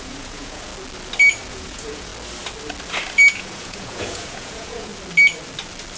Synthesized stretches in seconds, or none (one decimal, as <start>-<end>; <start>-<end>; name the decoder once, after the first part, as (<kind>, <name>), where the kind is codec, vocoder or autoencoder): 0.0-0.7 (vocoder, Vocos); 1.5-2.1; 3.3-4.9